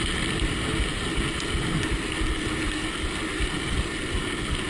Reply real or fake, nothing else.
real